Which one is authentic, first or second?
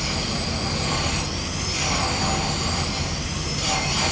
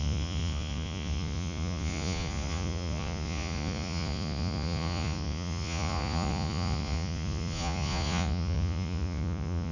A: first